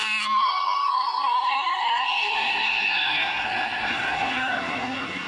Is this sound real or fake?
fake